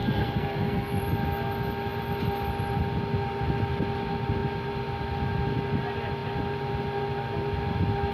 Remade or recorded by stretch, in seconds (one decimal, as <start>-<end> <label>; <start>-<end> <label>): 0.0-1.0 remade; 1.0-8.1 recorded